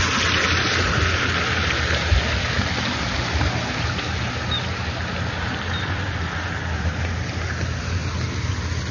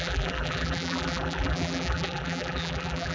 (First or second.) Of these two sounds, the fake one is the second